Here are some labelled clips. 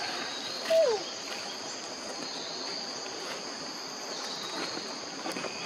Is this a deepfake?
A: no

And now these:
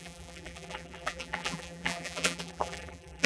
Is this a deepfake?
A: yes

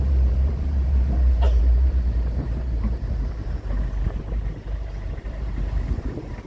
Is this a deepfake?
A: yes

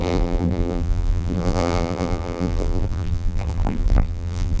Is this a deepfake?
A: yes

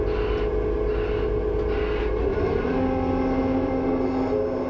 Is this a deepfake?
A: no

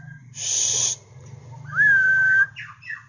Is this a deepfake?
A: yes